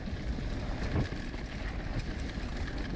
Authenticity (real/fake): real